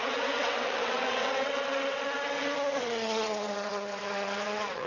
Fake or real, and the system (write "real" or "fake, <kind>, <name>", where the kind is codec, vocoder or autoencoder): fake, vocoder, WaveNeXt